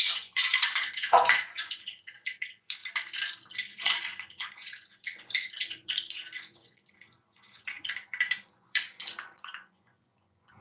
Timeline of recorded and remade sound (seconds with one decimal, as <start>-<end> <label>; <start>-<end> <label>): 0.0-2.8 remade; 2.8-3.6 recorded; 3.6-10.6 remade